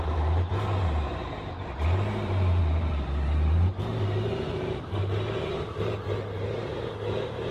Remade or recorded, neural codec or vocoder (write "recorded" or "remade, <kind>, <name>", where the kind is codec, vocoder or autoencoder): remade, vocoder, BigVGAN v2